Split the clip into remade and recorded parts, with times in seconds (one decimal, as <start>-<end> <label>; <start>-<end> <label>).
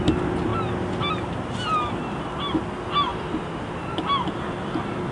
0.0-5.1 recorded